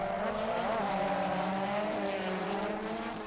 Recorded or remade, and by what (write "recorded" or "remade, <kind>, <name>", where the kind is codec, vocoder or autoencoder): remade, vocoder, BigVGAN v2